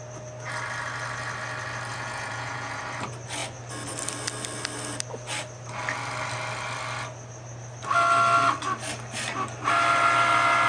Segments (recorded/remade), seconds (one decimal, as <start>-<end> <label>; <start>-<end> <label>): 0.0-1.9 recorded; 1.9-2.8 remade; 2.8-10.7 recorded